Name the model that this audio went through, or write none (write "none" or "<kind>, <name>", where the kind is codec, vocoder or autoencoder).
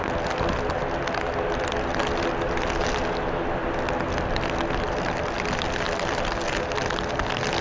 none